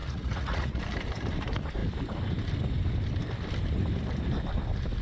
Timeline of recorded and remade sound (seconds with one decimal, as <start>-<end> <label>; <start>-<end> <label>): 0.0-0.8 remade; 0.8-5.0 recorded